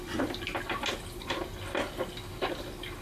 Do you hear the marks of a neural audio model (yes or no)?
no